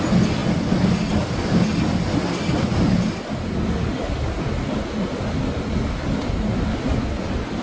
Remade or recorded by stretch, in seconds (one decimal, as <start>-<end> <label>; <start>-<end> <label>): 0.0-7.6 recorded